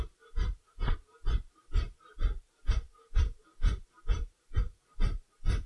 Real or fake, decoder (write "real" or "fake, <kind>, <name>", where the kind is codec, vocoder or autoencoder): fake, vocoder, BigVGAN v2